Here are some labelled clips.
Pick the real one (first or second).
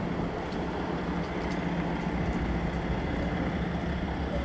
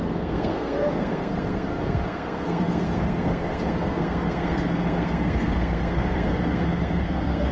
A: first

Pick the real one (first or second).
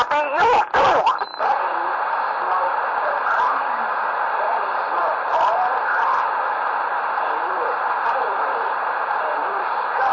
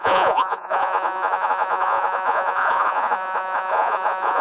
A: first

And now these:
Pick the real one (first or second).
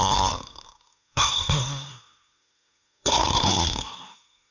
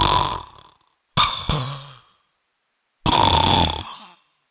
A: second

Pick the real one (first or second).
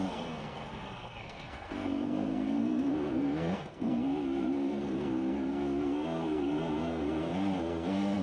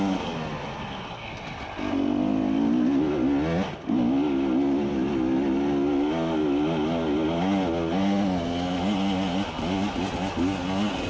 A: second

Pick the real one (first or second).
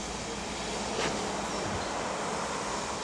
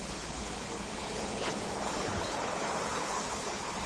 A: first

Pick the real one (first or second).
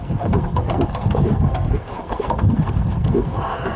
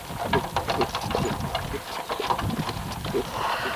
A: second